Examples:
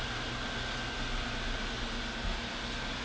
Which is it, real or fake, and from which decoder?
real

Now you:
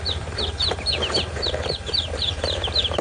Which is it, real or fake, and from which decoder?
fake, vocoder, BigVGAN v2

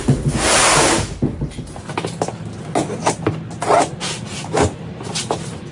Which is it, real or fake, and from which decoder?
real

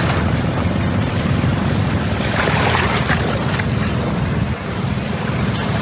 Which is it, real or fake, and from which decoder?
fake, vocoder, BigVGAN v2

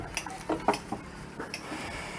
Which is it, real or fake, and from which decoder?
real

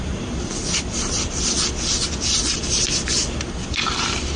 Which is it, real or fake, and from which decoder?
fake, vocoder, BigVGAN v2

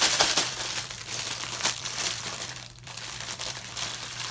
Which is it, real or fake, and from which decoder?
fake, vocoder, BigVGAN v2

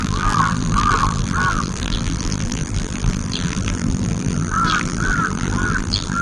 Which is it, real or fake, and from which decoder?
fake, vocoder, BigVGAN v2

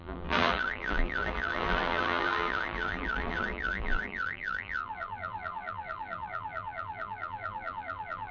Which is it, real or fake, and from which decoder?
fake, vocoder, BigVGAN v2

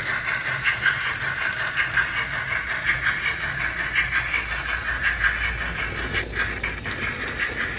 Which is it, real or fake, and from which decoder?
real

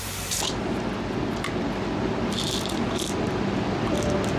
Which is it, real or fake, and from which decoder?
real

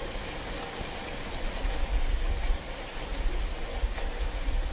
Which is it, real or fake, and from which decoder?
real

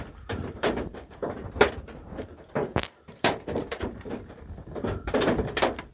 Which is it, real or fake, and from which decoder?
fake, vocoder, BigVGAN v2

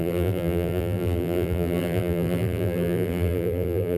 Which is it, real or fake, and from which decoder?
fake, vocoder, BigVGAN v2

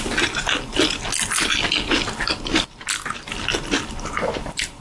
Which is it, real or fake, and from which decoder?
real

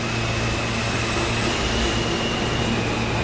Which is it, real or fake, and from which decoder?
real